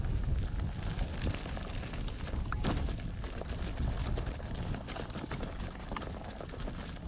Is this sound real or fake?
real